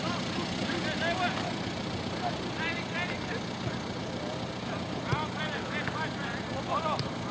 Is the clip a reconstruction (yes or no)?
no